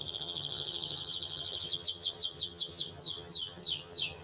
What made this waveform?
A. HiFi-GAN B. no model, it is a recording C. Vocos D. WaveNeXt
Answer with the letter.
A